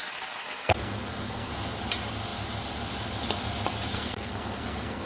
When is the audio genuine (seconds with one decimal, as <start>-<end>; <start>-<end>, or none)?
0.0-0.4; 1.5-3.9